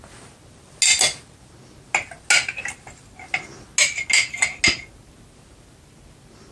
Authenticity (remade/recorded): recorded